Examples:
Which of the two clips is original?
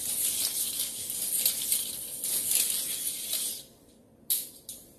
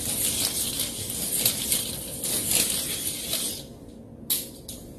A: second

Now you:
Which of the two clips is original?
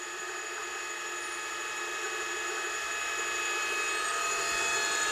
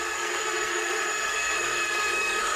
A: first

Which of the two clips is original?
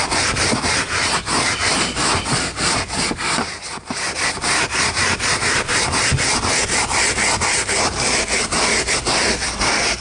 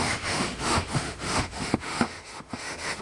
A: first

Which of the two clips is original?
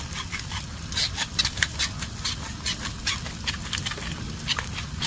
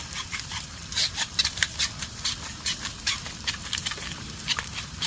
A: first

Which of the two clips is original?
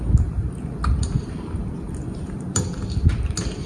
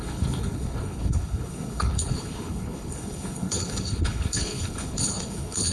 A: first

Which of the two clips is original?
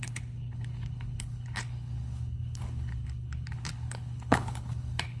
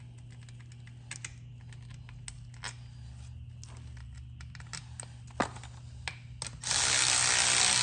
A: second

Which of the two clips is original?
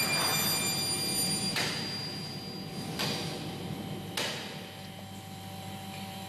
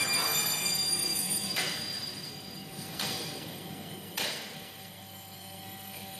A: first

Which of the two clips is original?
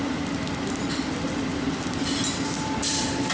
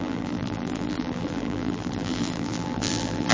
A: first